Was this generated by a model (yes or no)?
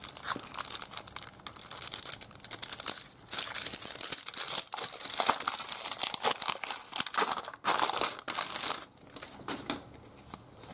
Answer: no